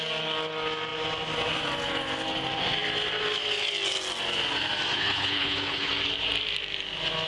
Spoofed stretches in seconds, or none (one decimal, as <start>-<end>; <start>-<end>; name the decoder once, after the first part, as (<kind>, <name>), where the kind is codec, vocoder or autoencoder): 4.9-5.9 (codec, HILCodec)

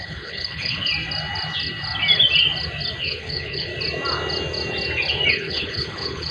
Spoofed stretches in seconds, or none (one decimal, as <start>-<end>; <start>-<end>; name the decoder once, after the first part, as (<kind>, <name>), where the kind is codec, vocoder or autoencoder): 0.0-0.9 (codec, HILCodec); 3.0-3.7; 5.3-6.3